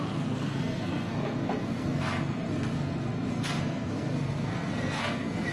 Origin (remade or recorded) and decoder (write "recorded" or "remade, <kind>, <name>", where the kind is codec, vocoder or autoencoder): remade, codec, SNAC